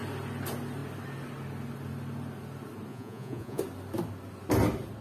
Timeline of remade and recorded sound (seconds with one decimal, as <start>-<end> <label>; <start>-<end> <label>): 0.0-2.9 recorded; 2.9-3.6 remade; 3.6-5.0 recorded